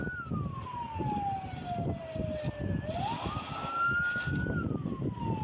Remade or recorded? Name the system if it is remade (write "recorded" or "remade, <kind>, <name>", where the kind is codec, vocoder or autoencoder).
recorded